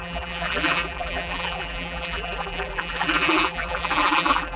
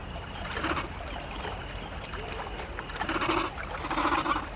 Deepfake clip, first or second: first